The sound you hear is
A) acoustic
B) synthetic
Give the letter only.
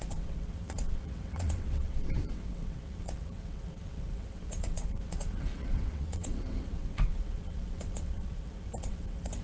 B